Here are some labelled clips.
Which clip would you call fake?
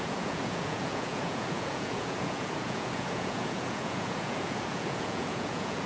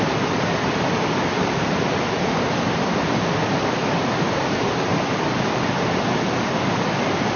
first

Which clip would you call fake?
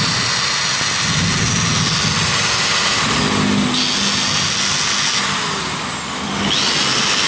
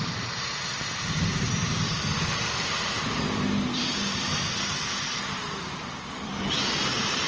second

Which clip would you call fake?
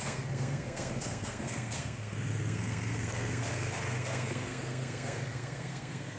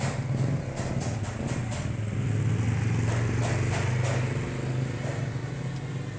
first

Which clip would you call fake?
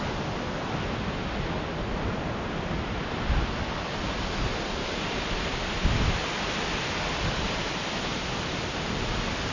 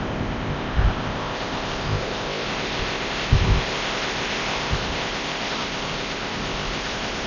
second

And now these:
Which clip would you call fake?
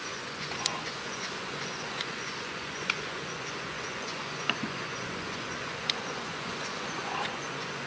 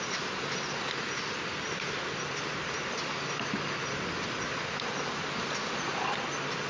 first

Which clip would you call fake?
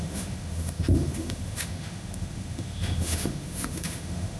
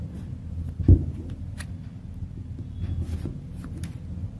first